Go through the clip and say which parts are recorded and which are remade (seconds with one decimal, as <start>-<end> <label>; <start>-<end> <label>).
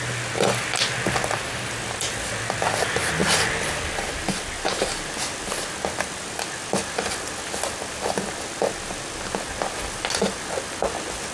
0.0-11.3 recorded